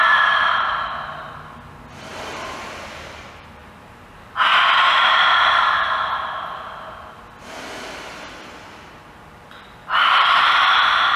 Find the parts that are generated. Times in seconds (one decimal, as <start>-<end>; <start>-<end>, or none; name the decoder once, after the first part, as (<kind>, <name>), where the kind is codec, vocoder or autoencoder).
2.1-3.2 (vocoder, BigVGAN v2); 3.6-4.8